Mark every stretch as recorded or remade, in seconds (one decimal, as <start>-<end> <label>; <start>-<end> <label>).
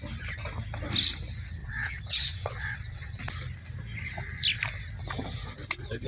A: 0.0-1.6 recorded; 1.6-3.2 remade; 3.2-6.1 recorded